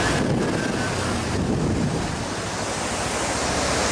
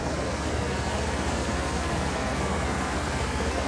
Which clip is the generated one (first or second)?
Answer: second